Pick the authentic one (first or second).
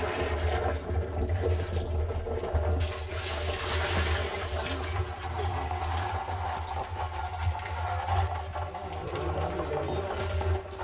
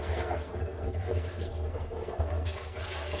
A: first